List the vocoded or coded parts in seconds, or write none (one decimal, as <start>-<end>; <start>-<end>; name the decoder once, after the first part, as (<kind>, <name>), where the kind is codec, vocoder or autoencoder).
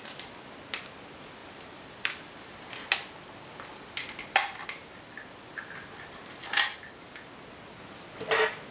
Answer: 1.4-2.9 (vocoder, BigVGAN v2)